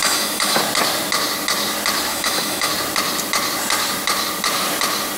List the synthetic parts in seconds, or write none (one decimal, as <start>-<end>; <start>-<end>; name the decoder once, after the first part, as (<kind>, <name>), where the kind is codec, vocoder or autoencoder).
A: 0.0-0.6 (autoencoder, DAC-VAE); 2.1-2.7